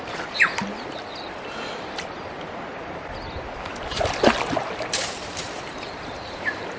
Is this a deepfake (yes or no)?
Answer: no